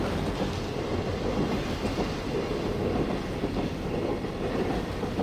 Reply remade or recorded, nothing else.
recorded